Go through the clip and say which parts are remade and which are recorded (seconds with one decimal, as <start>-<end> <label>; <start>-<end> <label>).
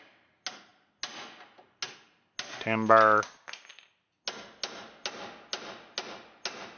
0.0-6.8 recorded